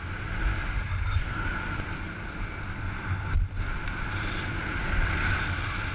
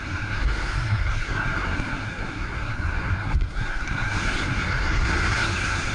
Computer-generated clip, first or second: second